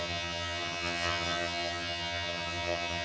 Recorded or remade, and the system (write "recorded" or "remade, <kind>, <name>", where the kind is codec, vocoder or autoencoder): remade, vocoder, HiFi-GAN